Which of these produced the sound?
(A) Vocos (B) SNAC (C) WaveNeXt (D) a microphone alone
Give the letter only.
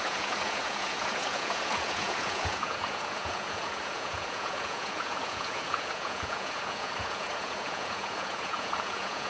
A